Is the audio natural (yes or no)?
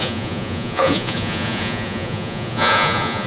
no